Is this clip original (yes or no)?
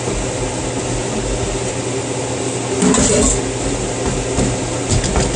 yes